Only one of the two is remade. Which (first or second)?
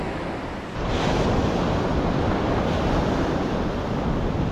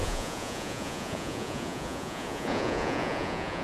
second